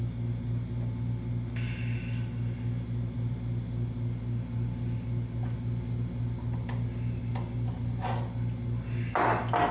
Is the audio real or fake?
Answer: real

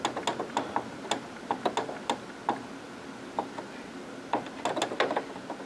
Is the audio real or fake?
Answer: real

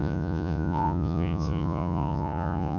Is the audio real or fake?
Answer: fake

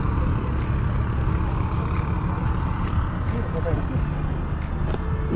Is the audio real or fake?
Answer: real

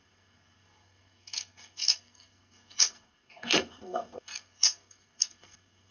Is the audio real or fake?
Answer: fake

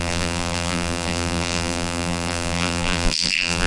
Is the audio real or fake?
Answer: fake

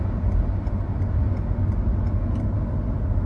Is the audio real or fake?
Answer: real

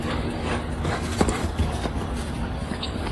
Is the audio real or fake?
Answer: fake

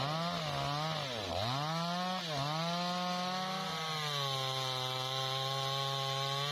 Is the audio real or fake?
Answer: real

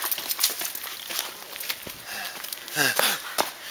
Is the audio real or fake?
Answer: real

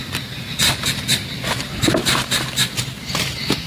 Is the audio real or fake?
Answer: real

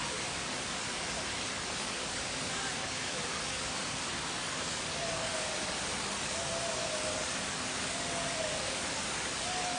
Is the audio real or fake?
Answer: fake